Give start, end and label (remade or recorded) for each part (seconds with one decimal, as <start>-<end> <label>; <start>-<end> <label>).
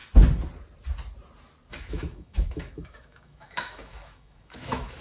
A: 0.0-1.7 recorded; 1.7-5.0 remade